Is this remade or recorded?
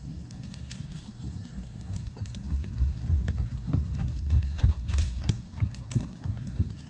remade